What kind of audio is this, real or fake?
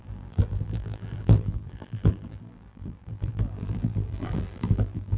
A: fake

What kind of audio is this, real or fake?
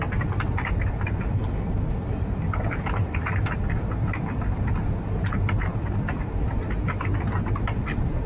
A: fake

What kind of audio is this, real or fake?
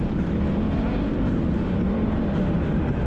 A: fake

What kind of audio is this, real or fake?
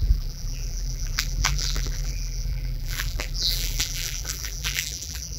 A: fake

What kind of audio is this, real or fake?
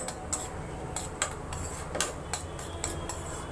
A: real